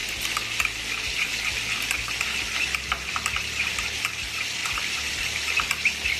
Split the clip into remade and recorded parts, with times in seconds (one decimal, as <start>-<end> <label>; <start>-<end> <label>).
0.0-4.6 recorded; 4.6-5.4 remade; 5.4-6.2 recorded